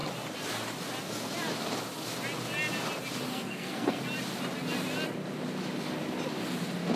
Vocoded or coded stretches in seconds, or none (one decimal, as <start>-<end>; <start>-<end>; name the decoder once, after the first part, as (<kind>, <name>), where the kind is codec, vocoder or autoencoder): 3.3-4.0 (codec, SNAC)